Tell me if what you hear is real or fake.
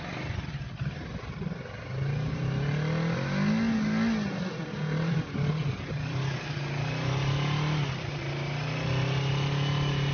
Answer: real